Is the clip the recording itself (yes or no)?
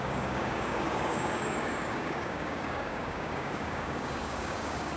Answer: no